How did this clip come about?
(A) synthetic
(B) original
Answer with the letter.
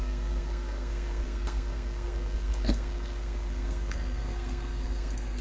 A